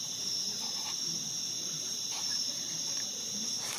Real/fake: fake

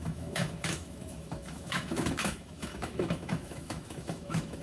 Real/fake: fake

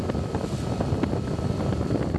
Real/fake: real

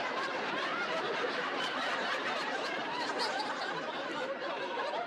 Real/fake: fake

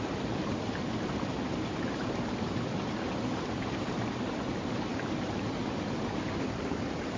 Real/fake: real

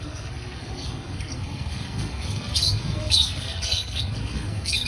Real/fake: fake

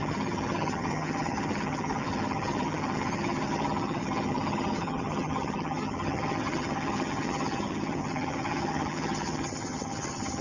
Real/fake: fake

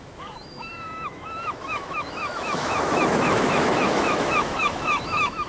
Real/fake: fake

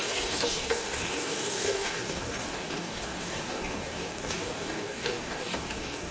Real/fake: fake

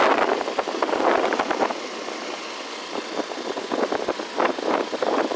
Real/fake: real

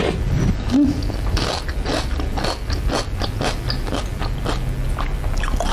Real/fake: real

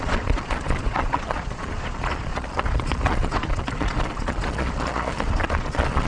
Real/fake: fake